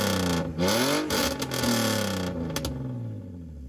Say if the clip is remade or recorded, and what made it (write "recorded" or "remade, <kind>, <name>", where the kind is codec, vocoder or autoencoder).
recorded